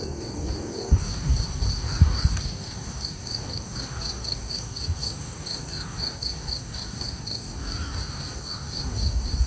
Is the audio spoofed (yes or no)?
yes